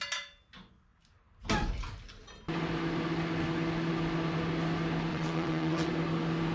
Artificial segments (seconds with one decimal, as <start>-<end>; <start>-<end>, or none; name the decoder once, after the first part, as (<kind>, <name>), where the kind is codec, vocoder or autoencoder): 5.1-5.9 (vocoder, WaveNeXt)